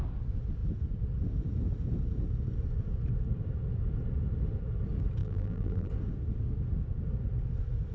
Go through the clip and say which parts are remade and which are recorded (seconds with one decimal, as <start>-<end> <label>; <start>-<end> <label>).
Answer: 0.0-5.2 recorded; 5.2-5.9 remade; 5.9-7.9 recorded